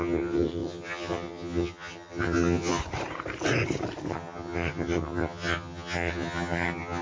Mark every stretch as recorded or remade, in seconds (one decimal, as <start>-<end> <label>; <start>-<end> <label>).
0.0-2.8 remade; 2.8-4.1 recorded; 4.1-7.0 remade